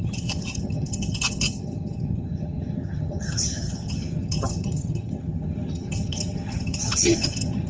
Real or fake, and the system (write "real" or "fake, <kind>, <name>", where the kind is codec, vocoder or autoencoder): fake, vocoder, HiFi-GAN